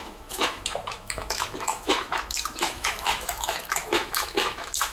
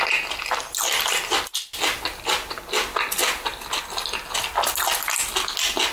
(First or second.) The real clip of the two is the second